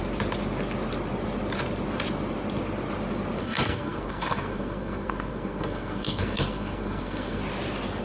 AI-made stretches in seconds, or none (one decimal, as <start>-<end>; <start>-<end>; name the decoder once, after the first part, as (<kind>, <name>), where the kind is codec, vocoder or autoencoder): 3.4-7.4 (codec, SNAC)